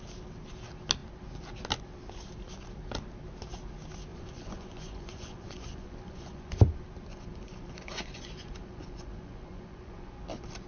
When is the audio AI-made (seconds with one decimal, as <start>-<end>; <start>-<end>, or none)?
4.1-6.6; 7.1-10.1